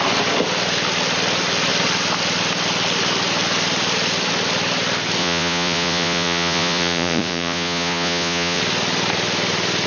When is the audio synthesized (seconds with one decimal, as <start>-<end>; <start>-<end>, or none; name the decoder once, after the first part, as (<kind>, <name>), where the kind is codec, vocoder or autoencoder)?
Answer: 5.2-8.6 (vocoder, Vocos)